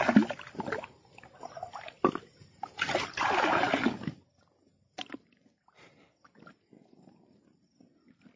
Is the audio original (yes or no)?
yes